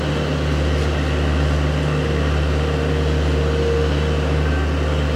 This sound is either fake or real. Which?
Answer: real